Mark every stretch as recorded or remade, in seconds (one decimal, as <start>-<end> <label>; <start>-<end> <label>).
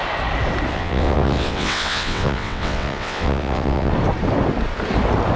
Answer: 0.0-0.7 recorded; 0.7-3.9 remade; 3.9-5.4 recorded